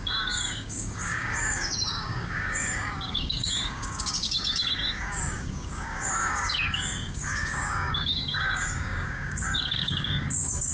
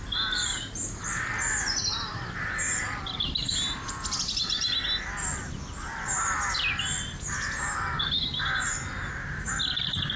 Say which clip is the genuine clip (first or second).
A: second